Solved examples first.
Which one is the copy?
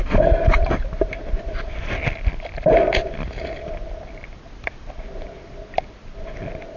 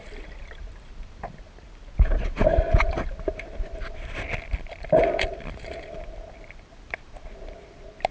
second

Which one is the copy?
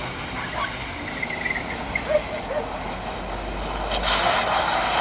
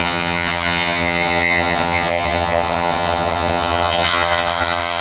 second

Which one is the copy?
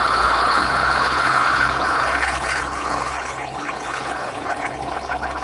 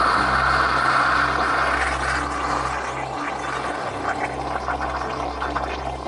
first